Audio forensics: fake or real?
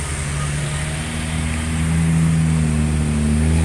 real